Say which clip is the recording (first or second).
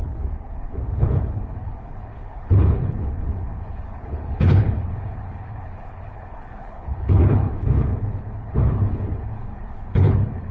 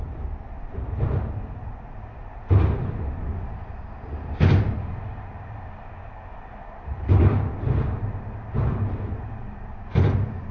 second